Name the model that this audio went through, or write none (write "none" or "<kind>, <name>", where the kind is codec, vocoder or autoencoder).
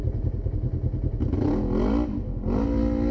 none